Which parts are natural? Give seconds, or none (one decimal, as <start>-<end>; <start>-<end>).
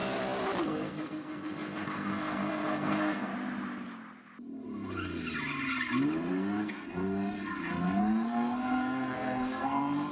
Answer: 0.0-0.6; 3.3-6.3